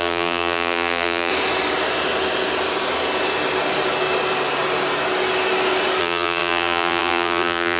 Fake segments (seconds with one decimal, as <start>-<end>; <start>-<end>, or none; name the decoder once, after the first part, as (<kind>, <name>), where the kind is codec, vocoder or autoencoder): 0.0-1.3 (vocoder, BigVGAN v2); 6.0-7.8